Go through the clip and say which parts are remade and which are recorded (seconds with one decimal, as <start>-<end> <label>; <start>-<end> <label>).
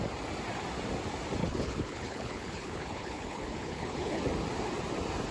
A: 0.0-1.4 recorded; 1.4-4.2 remade; 4.2-5.3 recorded